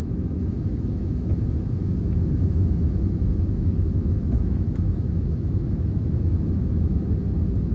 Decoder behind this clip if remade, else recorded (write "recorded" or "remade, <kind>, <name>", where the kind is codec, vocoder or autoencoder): remade, autoencoder, DAC-VAE